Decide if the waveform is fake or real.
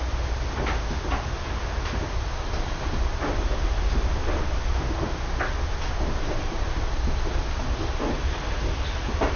real